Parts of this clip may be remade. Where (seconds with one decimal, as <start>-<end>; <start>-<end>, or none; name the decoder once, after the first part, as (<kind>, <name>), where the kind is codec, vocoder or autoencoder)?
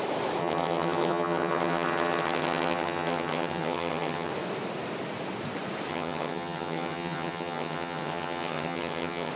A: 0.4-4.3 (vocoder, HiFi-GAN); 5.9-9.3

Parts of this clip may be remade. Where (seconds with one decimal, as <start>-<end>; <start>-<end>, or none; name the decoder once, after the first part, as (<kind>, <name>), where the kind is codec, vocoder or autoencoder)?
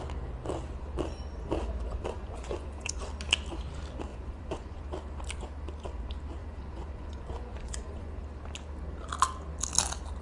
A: 1.9-3.0 (vocoder, Vocos); 4.1-4.8; 6.4-8.2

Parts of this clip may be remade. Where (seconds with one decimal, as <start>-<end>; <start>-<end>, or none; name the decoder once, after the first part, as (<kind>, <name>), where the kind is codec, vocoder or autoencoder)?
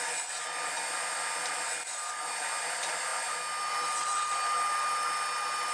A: none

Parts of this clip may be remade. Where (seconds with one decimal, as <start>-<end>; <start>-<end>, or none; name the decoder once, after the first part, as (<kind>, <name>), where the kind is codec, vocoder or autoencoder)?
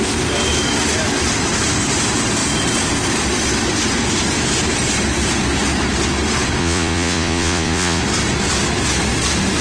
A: 6.6-8.0 (vocoder, Vocos)